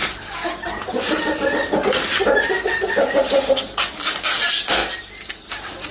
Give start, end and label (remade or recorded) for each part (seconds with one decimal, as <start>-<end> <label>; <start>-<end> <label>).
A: 0.0-5.9 recorded